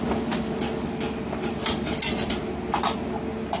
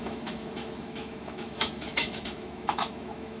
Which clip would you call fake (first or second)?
second